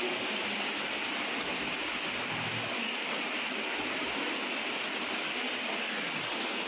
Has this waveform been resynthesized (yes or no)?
no